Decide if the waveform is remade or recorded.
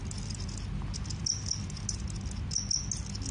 recorded